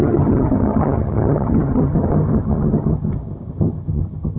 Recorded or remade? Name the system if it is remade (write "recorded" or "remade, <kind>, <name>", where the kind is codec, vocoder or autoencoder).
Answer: remade, vocoder, HiFi-GAN